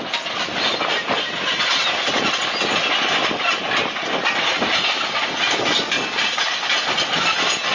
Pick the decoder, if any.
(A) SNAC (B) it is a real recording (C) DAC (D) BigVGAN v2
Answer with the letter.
B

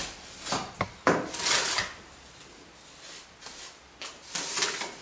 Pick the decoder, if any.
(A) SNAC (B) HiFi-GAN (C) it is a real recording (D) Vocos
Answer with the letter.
C